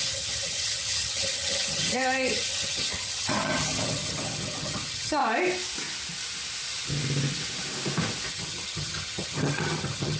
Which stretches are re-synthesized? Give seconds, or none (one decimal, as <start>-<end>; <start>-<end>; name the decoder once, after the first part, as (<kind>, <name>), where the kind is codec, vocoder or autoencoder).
0.0-5.2 (vocoder, HiFi-GAN); 8.3-10.2